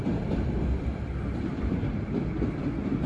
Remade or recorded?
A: recorded